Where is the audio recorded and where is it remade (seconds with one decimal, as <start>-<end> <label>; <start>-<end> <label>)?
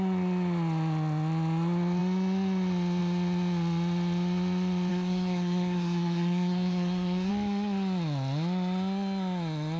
0.0-4.9 recorded; 4.9-7.3 remade; 7.3-9.8 recorded